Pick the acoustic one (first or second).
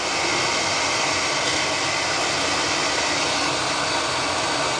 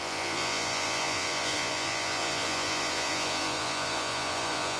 first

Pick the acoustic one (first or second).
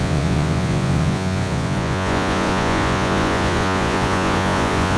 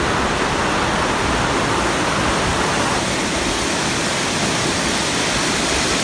second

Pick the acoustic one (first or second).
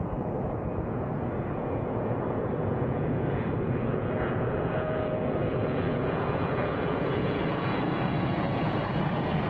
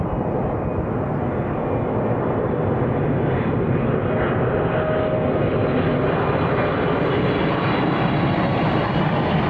second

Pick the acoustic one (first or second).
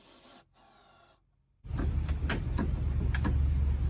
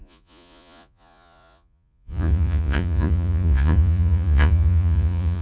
first